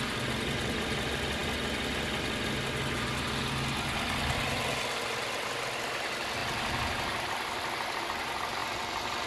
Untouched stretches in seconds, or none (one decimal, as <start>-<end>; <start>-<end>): 0.0-9.3